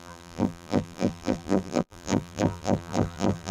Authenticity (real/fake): fake